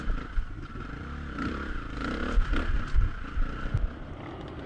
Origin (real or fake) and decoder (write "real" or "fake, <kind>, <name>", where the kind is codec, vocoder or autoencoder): real